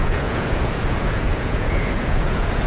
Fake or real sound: fake